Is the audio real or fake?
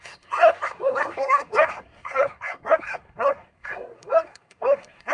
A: fake